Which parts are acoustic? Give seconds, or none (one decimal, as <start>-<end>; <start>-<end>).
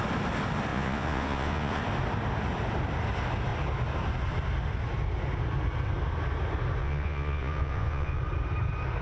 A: 0.0-0.7; 1.8-6.8; 8.2-9.0